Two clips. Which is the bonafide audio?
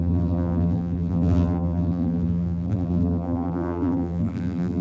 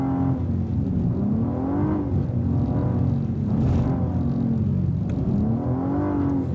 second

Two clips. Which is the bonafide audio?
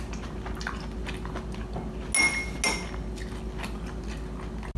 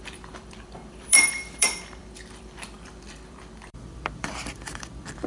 first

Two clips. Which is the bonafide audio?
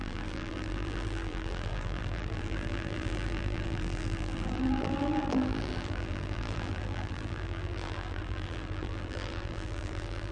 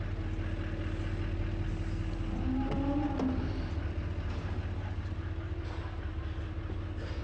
second